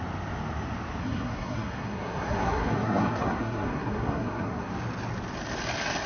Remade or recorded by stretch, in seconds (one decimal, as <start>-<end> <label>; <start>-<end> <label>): 0.0-1.0 recorded; 1.0-4.7 remade; 4.7-6.1 recorded